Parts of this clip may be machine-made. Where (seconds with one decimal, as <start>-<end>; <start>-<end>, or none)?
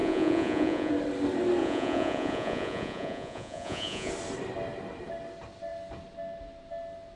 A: 0.0-0.9; 1.6-4.1